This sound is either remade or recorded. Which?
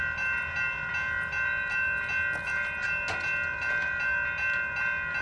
recorded